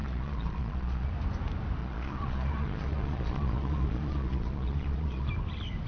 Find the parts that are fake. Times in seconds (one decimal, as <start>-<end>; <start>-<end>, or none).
0.0-1.1; 1.8-5.3